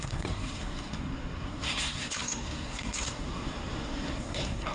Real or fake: fake